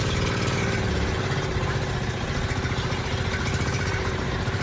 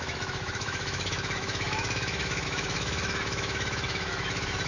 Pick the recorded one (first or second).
first